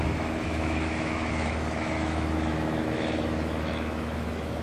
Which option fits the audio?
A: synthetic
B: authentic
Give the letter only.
A